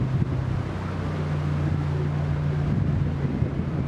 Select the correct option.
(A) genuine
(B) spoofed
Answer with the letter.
A